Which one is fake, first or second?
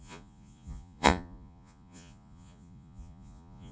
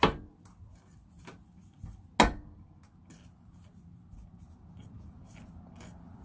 first